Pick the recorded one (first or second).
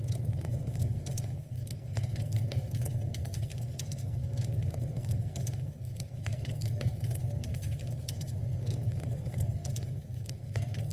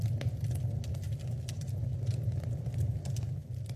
second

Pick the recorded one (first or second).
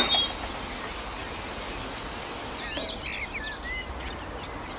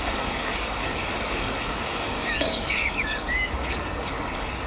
first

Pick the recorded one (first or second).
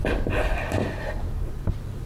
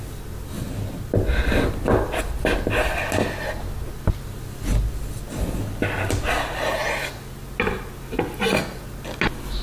second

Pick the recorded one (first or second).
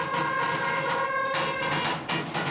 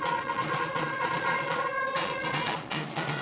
first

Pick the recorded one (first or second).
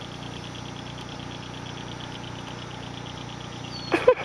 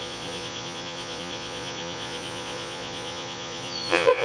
first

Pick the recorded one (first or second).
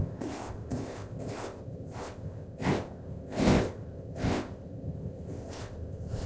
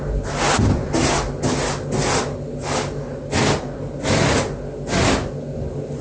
second